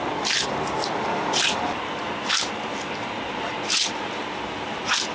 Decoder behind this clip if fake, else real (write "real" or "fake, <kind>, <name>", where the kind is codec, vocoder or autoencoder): real